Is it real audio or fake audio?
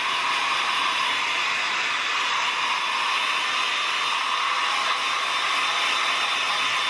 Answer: real